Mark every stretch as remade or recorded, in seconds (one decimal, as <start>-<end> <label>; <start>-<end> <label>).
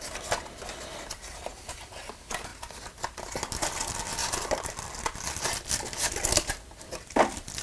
0.0-4.2 recorded; 4.2-4.7 remade; 4.7-7.6 recorded